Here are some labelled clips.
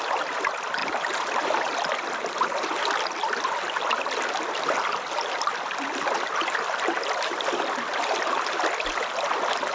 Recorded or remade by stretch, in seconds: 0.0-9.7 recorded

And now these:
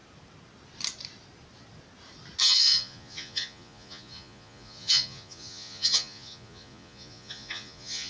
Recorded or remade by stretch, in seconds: 0.0-2.4 recorded; 2.4-8.1 remade